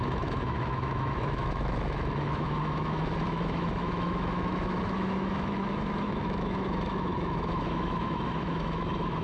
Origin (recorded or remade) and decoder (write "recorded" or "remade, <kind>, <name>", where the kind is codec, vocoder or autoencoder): remade, autoencoder, DAC-VAE